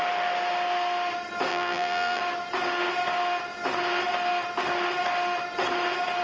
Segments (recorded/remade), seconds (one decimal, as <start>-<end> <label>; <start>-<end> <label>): 0.0-1.5 recorded; 1.5-2.2 remade; 2.2-6.2 recorded